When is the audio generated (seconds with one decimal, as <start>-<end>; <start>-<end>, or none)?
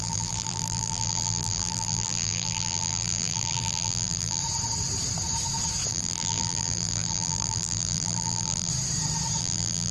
0.0-4.4; 5.9-8.7; 9.4-9.9